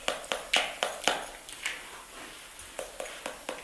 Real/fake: real